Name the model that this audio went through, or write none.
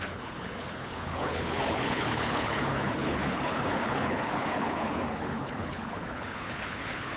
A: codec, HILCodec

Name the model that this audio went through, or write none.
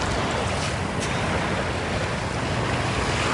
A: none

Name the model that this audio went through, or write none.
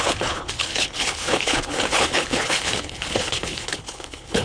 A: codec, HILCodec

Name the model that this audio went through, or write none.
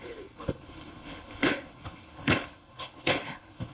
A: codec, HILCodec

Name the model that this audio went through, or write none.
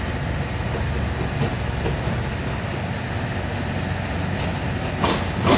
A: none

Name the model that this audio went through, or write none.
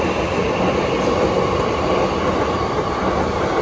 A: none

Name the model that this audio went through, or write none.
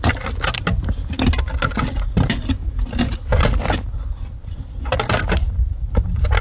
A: none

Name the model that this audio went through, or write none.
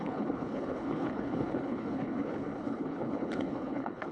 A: codec, HILCodec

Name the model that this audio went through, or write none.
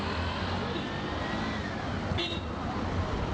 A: none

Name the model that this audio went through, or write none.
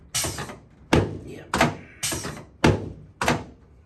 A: none